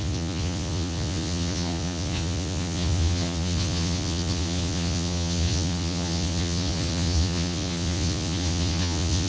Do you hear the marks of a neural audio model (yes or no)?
yes